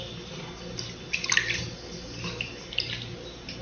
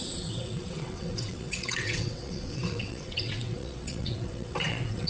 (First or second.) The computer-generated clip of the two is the second